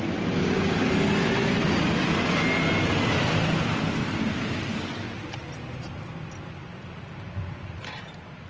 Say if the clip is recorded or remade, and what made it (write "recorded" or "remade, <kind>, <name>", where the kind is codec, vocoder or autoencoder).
recorded